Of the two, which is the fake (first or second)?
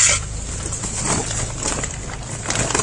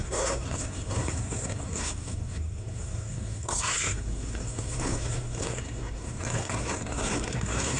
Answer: second